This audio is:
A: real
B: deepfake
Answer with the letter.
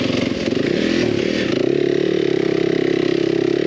A